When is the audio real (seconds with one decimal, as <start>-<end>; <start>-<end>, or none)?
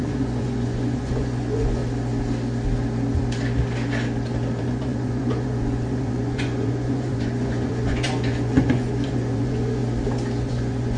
1.8-4.6; 9.8-10.4